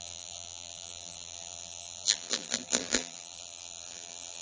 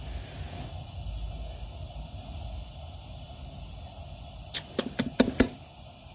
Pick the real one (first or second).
second